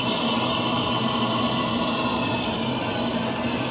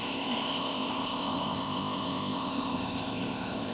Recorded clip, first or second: first